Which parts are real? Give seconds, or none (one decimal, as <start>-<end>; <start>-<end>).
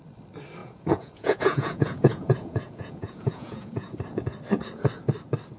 0.0-0.6; 4.0-5.6